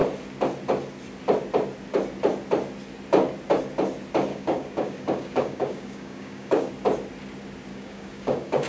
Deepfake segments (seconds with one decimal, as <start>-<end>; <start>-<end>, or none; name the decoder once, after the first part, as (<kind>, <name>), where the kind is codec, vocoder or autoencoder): 4.3-6.7 (codec, DAC); 7.7-8.7

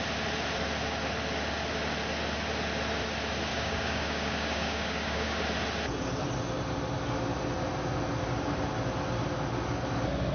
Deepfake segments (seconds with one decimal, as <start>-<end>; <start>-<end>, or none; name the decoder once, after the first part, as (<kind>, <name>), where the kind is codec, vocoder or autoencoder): 3.5-5.4 (codec, DAC)

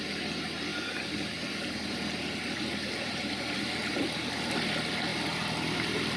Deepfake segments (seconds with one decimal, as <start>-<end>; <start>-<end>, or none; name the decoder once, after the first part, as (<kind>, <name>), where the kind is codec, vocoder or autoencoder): none

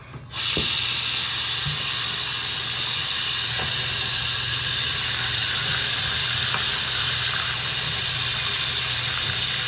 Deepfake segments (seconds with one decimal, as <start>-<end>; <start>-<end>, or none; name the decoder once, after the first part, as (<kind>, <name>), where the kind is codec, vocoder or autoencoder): none

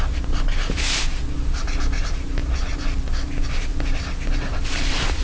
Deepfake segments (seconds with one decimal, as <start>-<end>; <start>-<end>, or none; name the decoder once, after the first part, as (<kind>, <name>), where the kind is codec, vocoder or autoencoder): none

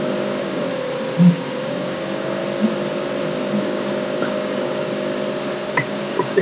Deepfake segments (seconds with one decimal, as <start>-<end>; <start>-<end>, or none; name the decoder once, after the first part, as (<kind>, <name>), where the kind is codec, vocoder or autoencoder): 0.0-0.7 (codec, DAC); 1.3-2.4; 3.6-5.1; 5.7-6.4